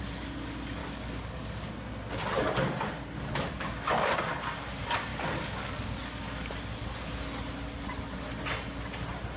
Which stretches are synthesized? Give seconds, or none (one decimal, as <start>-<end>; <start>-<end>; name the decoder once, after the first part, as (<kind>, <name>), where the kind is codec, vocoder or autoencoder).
0.8-1.7 (codec, DAC); 5.1-6.5